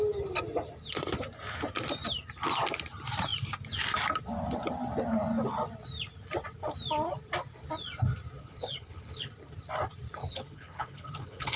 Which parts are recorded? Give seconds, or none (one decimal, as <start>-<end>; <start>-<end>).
0.0-8.4; 9.3-10.2